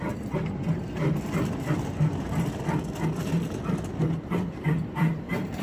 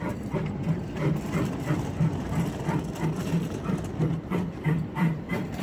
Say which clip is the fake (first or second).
second